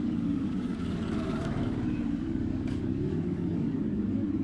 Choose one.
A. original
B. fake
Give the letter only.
B